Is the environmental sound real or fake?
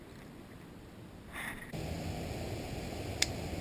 real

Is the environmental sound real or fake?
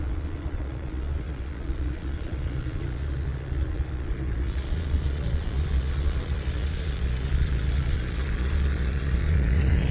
fake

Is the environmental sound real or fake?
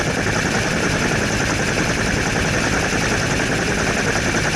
real